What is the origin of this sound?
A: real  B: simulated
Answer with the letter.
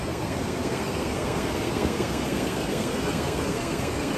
B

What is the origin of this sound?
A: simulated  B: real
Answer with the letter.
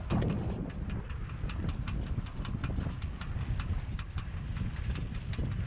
B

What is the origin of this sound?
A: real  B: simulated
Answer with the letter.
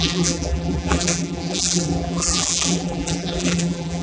B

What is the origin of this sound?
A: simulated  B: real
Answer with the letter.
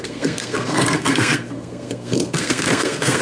A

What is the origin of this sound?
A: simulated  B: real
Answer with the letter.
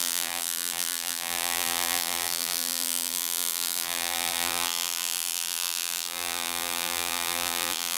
A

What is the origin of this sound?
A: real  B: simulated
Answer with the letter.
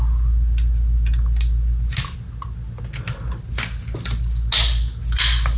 A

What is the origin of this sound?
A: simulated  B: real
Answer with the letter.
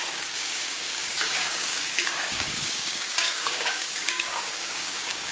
A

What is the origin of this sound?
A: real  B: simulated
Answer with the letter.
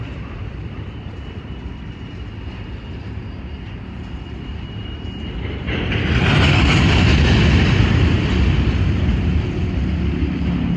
A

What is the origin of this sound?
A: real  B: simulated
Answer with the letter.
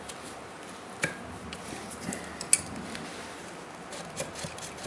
A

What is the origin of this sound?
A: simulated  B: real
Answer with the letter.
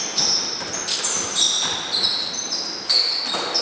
B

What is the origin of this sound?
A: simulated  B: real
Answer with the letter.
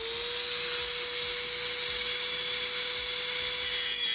B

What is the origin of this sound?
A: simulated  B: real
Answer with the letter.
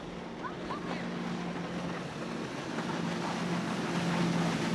B